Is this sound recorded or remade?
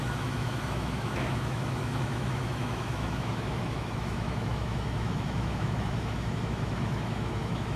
remade